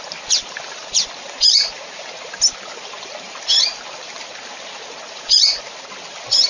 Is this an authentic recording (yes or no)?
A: yes